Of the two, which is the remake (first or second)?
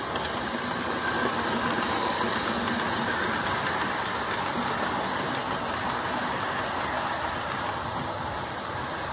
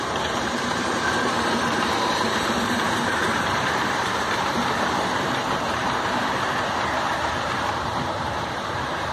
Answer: second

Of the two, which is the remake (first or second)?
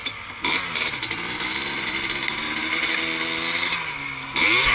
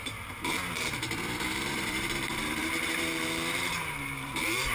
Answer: second